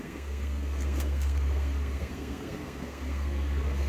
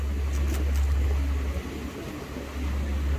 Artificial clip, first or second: first